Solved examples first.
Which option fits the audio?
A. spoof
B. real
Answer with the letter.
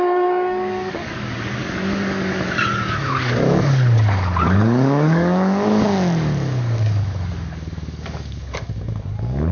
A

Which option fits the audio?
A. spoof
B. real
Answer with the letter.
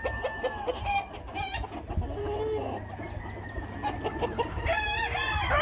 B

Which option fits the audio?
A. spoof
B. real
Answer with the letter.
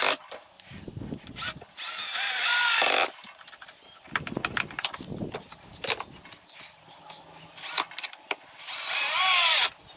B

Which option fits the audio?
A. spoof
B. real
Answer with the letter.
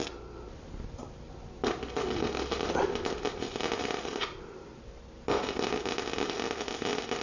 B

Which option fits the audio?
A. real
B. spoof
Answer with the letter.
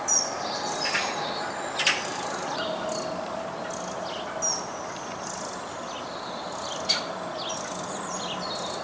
A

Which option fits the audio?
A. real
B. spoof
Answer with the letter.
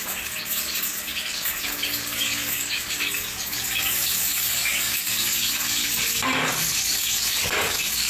B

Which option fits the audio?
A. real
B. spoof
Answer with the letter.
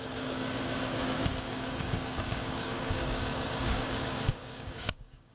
B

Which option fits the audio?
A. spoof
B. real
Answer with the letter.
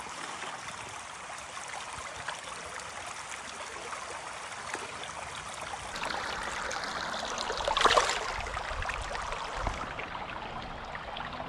B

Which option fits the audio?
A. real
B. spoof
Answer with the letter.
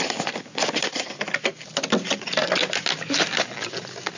A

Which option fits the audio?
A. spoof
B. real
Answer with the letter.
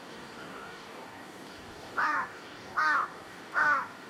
A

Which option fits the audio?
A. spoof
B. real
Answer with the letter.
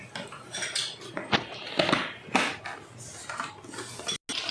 B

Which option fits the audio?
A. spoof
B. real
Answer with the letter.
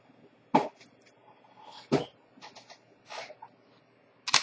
B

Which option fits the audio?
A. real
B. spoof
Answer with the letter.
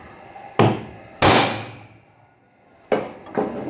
A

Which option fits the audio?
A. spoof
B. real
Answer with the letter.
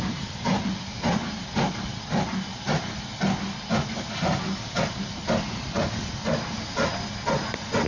B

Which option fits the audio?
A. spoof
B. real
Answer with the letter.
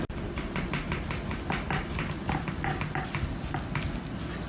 B